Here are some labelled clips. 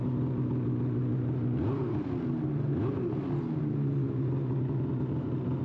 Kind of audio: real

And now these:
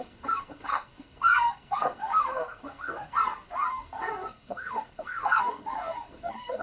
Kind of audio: fake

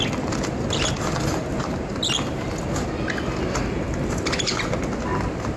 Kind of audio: real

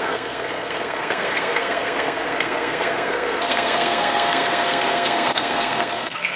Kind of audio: fake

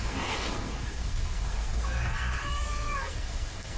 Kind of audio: fake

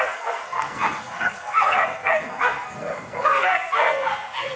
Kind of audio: fake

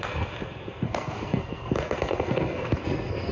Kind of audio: fake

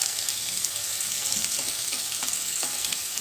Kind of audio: fake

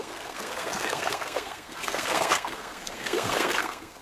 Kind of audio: fake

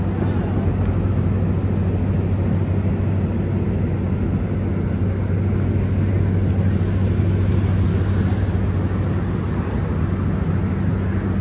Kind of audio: real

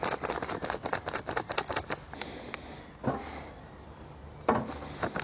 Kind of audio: real